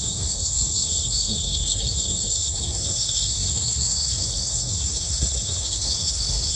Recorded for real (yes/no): no